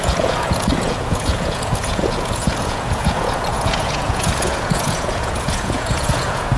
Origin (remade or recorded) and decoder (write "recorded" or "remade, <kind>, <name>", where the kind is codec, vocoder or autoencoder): remade, vocoder, Vocos